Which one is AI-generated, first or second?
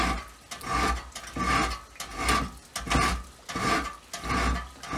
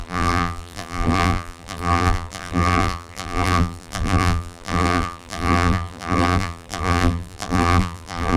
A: second